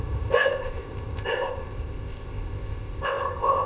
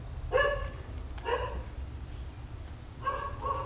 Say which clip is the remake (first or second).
first